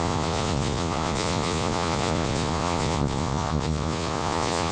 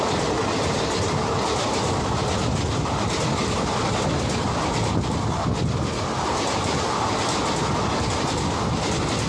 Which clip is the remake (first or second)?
first